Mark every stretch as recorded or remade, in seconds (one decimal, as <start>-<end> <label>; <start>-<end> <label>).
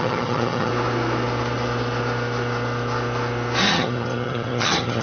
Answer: 0.0-0.7 remade; 0.7-3.7 recorded; 3.7-5.0 remade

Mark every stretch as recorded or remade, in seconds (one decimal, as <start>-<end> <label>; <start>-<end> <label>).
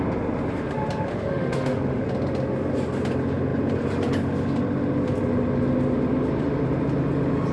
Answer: 0.0-1.1 recorded; 1.1-2.0 remade; 2.0-7.5 recorded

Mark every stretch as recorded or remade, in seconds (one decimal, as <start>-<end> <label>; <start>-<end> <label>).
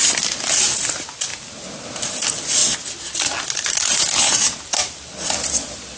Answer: 0.0-6.0 recorded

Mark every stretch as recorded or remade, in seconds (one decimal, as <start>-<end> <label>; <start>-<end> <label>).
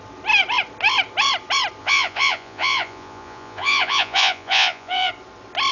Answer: 0.0-1.8 recorded; 1.8-5.1 remade; 5.1-5.7 recorded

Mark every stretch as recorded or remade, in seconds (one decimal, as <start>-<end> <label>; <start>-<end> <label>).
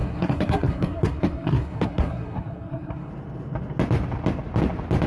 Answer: 0.0-3.1 remade; 3.1-5.1 recorded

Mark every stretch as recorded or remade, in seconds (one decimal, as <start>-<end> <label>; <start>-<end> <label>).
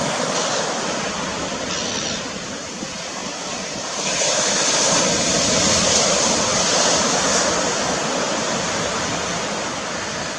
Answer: 0.0-1.8 recorded; 1.8-3.2 remade; 3.2-5.0 recorded; 5.0-6.5 remade; 6.5-8.2 recorded; 8.2-9.1 remade; 9.1-10.4 recorded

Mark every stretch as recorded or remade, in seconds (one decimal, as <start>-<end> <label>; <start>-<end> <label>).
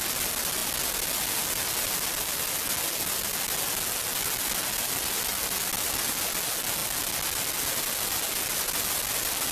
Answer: 0.0-9.5 recorded